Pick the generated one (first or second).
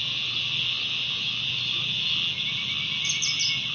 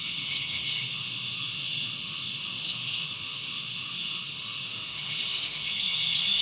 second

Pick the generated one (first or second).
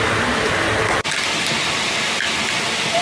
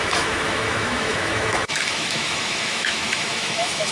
second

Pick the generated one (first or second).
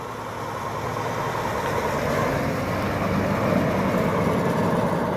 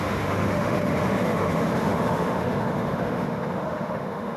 second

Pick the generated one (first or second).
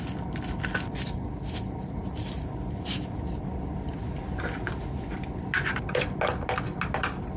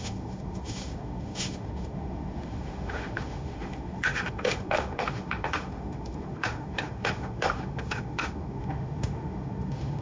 second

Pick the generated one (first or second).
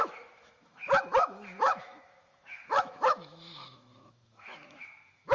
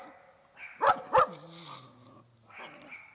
first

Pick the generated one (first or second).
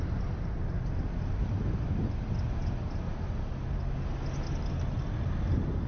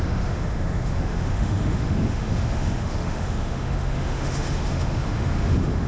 second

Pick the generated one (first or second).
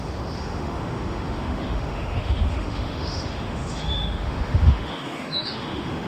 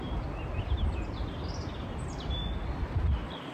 first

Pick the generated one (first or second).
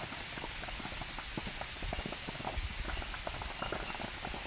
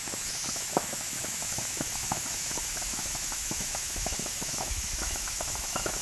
second